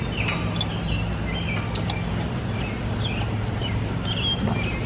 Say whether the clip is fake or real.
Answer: real